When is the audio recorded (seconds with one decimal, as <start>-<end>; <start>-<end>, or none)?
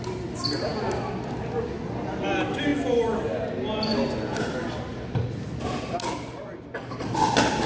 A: 0.0-7.7